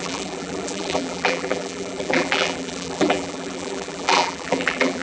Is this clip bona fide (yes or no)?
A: no